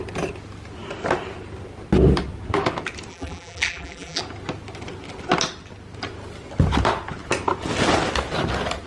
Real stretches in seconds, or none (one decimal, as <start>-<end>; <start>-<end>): 0.0-3.1; 4.2-8.9